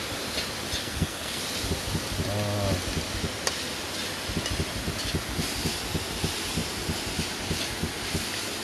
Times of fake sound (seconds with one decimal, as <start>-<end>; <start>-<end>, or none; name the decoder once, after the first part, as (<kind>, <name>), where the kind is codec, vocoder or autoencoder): 0.8-1.4 (codec, SNAC)